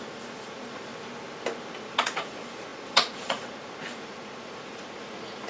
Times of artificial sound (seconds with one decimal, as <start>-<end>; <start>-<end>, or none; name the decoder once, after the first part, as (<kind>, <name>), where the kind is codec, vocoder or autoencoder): 0.0-0.9 (vocoder, Vocos); 1.7-5.5

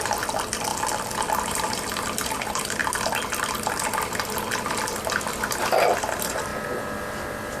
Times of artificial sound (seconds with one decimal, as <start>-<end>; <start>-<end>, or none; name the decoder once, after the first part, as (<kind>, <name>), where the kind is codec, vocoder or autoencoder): 0.0-0.7 (vocoder, BigVGAN v2); 1.5-2.8; 6.0-6.5; 7.1-7.6

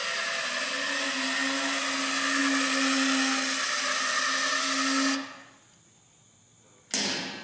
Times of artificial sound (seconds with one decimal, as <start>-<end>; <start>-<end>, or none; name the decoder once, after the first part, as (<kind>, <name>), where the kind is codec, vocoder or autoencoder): none

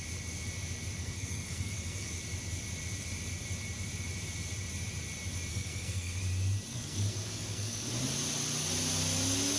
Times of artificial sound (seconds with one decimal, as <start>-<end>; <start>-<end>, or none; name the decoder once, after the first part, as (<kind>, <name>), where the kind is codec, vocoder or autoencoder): 1.0-2.1 (codec, SNAC); 5.5-6.2; 6.7-7.9